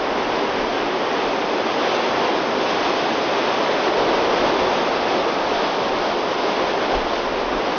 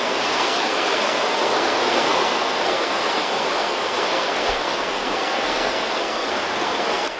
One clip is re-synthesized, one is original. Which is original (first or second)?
first